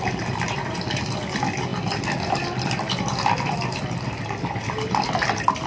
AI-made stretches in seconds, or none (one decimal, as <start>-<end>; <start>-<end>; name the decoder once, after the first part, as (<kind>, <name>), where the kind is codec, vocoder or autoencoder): none